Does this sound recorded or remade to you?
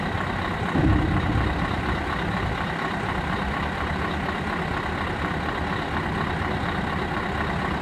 recorded